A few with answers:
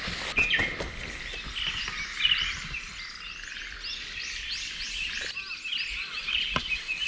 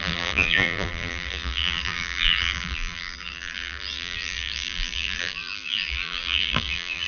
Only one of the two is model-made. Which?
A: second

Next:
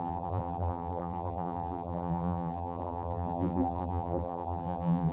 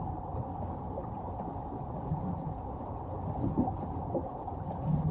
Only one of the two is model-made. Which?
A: first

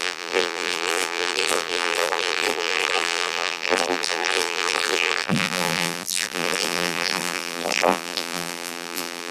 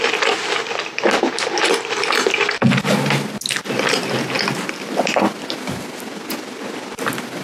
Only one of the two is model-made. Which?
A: first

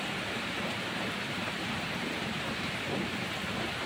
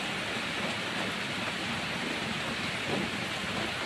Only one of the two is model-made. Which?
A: first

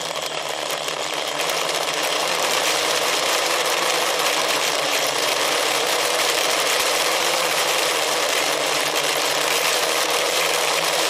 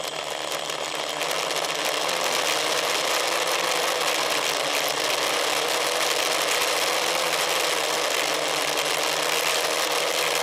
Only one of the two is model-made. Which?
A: first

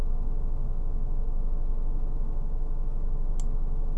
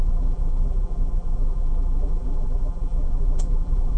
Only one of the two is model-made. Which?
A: second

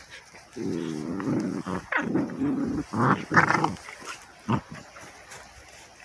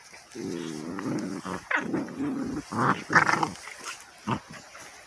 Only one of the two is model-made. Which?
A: first